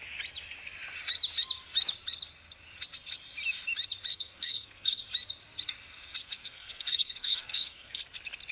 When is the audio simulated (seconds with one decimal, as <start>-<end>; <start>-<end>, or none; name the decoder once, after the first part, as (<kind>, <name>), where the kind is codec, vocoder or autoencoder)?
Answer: 4.1-5.0 (codec, SNAC); 6.2-8.0